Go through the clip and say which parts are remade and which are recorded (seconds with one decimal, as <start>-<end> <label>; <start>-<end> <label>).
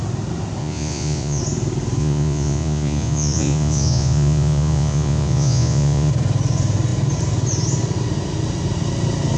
0.0-0.6 recorded; 0.6-1.4 remade; 1.4-2.0 recorded; 2.0-6.1 remade; 6.1-9.4 recorded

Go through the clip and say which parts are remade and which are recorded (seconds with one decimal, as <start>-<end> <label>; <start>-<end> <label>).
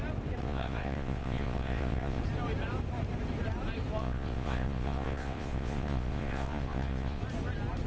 0.0-0.4 recorded; 0.4-2.2 remade; 2.2-4.0 recorded; 4.0-7.2 remade; 7.2-7.9 recorded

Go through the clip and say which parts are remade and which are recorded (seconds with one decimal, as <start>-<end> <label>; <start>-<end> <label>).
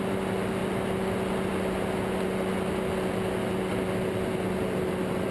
0.0-5.3 recorded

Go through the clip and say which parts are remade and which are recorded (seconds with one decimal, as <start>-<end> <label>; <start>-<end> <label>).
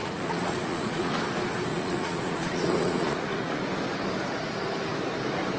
0.0-1.2 remade; 1.2-1.7 recorded; 1.7-3.6 remade; 3.6-5.6 recorded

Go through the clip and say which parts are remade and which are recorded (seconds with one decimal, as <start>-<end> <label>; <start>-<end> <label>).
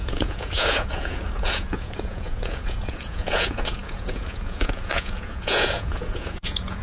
0.0-6.8 remade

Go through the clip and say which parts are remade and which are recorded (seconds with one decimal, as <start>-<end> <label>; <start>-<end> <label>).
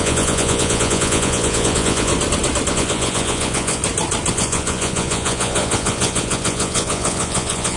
0.0-2.1 remade; 2.1-2.7 recorded; 2.7-3.8 remade; 3.8-4.3 recorded; 4.3-7.8 remade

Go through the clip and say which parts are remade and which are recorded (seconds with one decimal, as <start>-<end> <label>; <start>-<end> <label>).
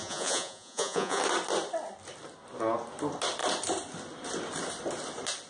0.0-1.2 remade; 1.2-5.5 recorded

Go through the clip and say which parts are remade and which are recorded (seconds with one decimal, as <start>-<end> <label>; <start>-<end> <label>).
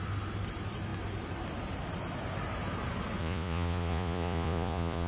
0.0-3.2 recorded; 3.2-5.1 remade